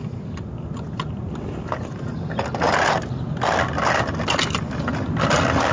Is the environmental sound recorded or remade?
recorded